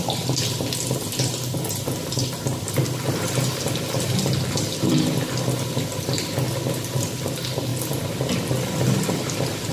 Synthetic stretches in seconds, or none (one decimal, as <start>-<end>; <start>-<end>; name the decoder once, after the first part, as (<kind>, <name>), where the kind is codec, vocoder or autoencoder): none